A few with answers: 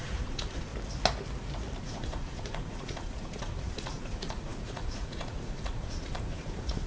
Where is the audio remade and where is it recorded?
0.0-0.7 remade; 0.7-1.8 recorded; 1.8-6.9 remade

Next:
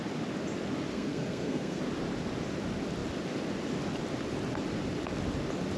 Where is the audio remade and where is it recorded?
0.0-0.9 recorded; 0.9-1.8 remade; 1.8-5.8 recorded

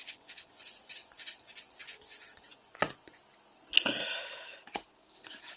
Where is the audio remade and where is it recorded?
0.0-3.2 remade; 3.2-5.6 recorded

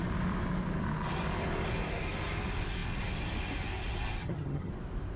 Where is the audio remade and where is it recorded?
0.0-4.2 recorded; 4.2-4.7 remade; 4.7-5.2 recorded

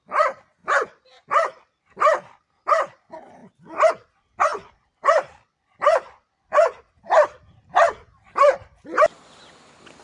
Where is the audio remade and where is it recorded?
0.0-0.6 recorded; 0.6-2.4 remade; 2.4-4.5 recorded; 4.5-8.8 remade; 8.8-10.0 recorded

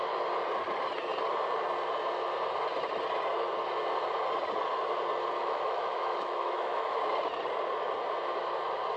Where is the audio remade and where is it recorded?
0.0-5.4 recorded; 5.4-7.0 remade; 7.0-9.0 recorded

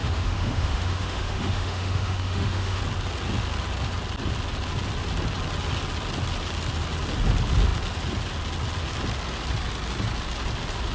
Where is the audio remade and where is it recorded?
0.0-2.8 remade; 2.8-10.9 recorded